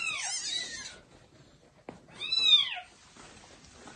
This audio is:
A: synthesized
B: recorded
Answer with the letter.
B